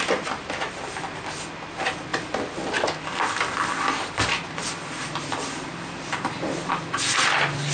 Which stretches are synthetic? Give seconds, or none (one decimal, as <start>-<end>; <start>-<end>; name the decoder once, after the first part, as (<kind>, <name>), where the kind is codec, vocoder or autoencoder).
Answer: none